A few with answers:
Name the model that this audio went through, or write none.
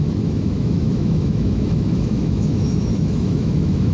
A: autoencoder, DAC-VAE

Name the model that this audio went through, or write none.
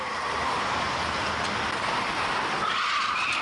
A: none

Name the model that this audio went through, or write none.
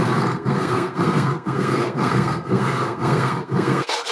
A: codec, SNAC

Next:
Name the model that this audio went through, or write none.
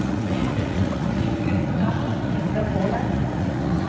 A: vocoder, Vocos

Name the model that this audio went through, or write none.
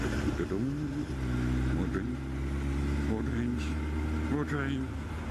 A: none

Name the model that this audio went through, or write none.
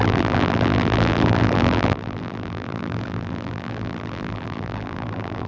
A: vocoder, BigVGAN v2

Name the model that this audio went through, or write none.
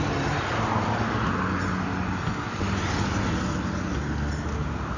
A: none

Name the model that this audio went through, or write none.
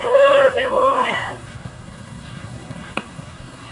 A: codec, SNAC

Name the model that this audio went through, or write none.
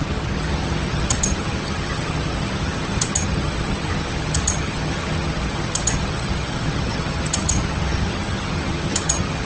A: vocoder, HiFi-GAN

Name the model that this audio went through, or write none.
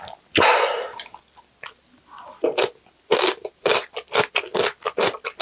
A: none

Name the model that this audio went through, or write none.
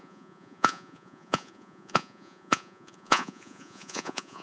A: vocoder, Vocos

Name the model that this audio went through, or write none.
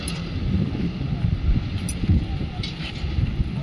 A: none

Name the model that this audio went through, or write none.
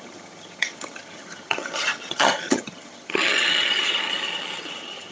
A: vocoder, HiFi-GAN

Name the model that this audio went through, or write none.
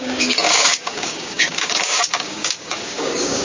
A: codec, DAC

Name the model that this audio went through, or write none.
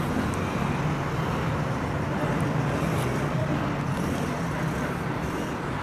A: none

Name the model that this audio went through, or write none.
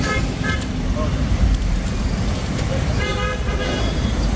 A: vocoder, BigVGAN v2